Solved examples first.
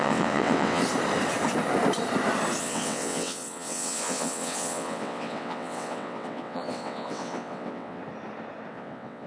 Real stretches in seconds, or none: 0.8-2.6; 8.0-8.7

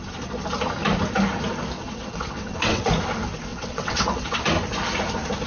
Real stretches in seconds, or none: 0.0-1.8; 2.9-3.5; 4.4-5.5

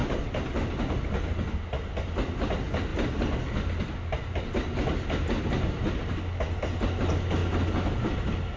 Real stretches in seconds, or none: 0.0-8.6

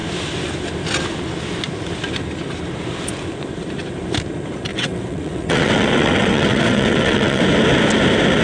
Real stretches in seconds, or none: 0.0-4.7; 7.4-8.4